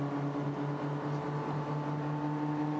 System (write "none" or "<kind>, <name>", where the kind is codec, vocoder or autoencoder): none